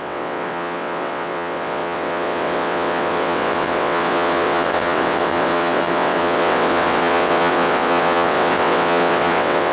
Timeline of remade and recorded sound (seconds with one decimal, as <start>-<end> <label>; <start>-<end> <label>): 0.0-9.7 remade